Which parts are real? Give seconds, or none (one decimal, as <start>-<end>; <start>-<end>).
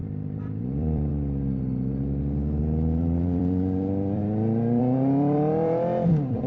1.9-2.6; 4.2-4.8